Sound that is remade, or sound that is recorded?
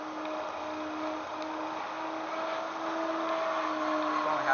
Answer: recorded